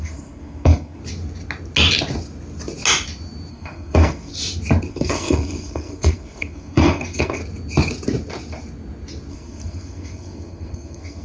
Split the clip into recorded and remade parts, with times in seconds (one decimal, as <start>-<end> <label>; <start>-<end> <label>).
0.0-1.0 remade; 1.0-3.5 recorded; 3.5-4.3 remade; 4.3-4.9 recorded; 4.9-7.4 remade; 7.4-9.3 recorded; 9.3-11.2 remade